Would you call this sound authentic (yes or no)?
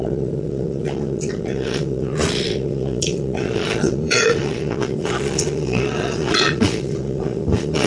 no